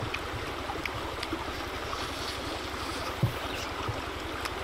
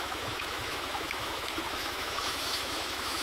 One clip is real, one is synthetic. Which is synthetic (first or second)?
second